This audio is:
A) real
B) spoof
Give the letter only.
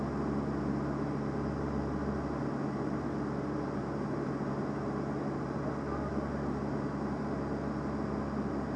A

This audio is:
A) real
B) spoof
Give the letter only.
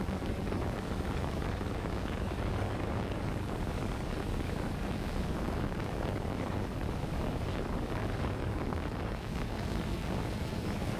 B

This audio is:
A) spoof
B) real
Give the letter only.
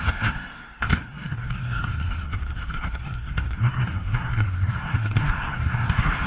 A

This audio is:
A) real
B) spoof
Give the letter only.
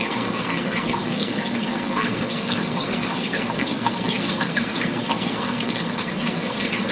B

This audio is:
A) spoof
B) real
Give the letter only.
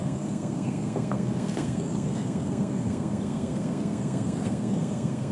A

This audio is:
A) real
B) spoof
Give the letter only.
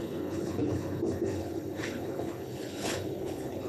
B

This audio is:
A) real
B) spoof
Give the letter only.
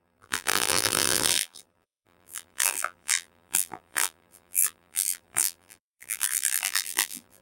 B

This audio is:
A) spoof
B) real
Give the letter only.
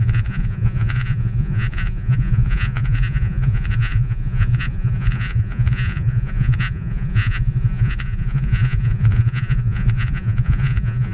A